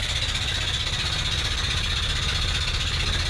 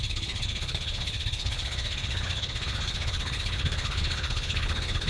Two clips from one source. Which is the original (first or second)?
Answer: first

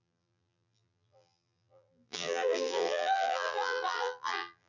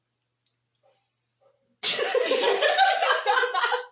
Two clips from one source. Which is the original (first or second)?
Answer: second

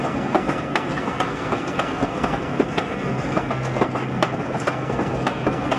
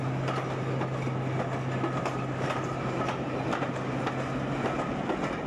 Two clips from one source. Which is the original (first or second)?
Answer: second